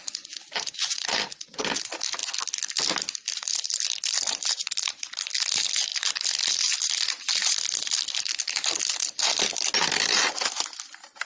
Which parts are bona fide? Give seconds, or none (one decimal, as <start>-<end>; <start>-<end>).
0.0-11.3